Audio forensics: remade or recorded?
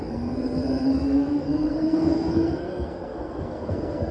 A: remade